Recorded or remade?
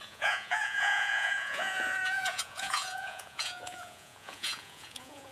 remade